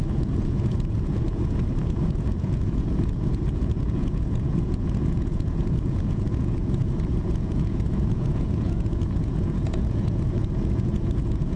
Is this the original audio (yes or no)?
no